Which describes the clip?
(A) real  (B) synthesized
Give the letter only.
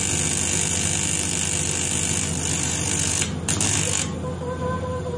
A